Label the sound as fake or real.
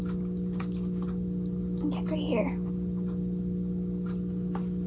real